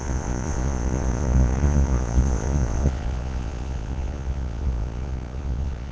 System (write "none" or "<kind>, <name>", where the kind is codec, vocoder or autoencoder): vocoder, Vocos